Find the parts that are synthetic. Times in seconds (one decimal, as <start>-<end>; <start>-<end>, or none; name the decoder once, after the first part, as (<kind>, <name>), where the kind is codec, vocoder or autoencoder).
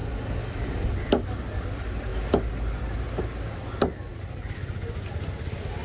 0.0-0.9 (codec, DAC)